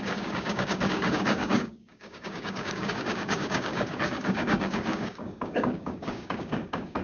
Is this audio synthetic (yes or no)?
yes